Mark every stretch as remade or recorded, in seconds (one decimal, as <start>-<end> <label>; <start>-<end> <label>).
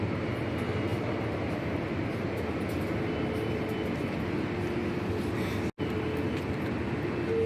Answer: 0.0-7.5 recorded